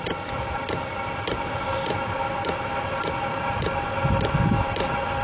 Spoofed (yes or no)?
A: no